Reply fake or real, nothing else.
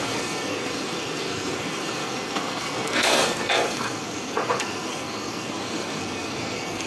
fake